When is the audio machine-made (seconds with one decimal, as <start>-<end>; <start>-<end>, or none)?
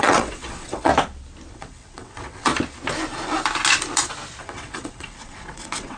0.0-0.9; 1.5-2.5; 4.4-6.0